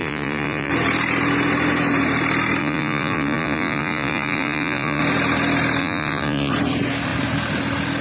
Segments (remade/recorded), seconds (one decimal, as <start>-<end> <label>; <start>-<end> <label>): 0.0-0.7 remade; 0.7-2.6 recorded; 2.6-5.0 remade; 5.0-5.8 recorded; 5.8-6.5 remade; 6.5-8.0 recorded